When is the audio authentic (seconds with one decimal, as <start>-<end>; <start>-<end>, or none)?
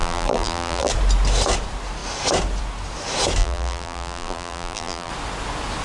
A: 0.9-3.4; 5.1-5.8